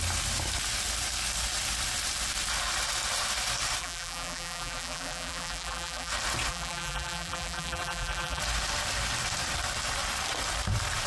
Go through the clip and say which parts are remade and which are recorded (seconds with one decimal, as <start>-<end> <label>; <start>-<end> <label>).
0.0-3.8 recorded; 3.8-6.1 remade; 6.1-6.5 recorded; 6.5-8.4 remade; 8.4-11.1 recorded